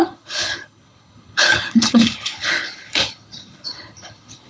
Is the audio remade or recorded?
remade